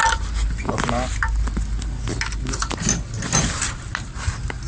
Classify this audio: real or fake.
real